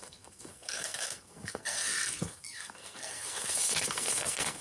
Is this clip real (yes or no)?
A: no